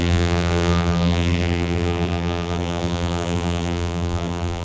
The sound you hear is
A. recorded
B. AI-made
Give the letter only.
B